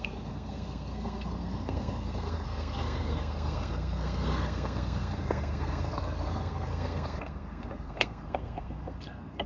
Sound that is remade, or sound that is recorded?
remade